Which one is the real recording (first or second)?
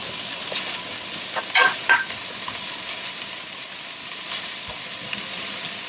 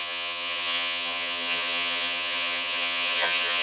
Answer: first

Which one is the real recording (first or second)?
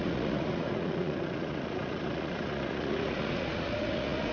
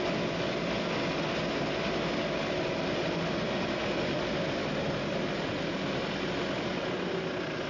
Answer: second